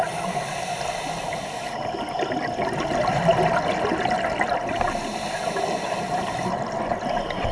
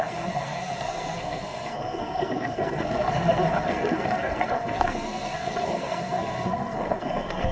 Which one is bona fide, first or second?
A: first